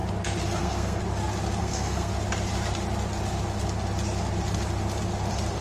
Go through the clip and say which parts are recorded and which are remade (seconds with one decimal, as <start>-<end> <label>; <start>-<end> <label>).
0.0-0.6 recorded; 0.6-1.0 remade; 1.0-1.6 recorded; 1.6-2.1 remade; 2.1-5.6 recorded